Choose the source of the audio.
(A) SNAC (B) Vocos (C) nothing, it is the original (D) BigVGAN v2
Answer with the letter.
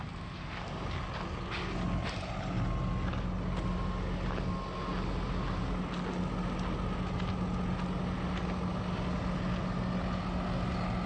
C